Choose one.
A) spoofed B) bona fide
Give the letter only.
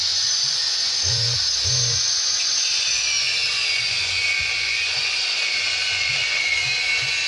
A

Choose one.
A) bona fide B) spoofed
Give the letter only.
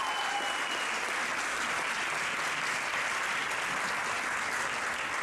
A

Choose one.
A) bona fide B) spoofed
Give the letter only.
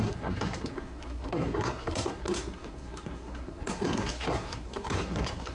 B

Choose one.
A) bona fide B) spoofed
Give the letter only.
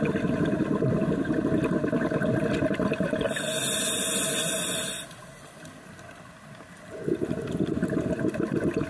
A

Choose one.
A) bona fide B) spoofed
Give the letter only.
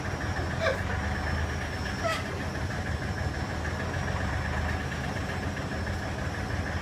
A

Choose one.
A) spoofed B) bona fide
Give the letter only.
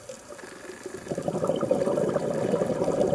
B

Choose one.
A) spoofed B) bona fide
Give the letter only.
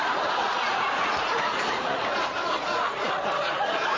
A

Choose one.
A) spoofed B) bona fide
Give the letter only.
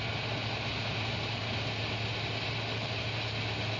B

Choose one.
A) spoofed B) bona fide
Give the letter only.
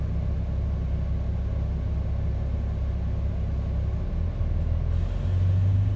B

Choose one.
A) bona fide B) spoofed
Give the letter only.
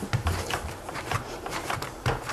B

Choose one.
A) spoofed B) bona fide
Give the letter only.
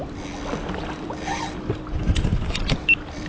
B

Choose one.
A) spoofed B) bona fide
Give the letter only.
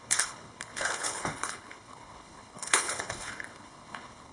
A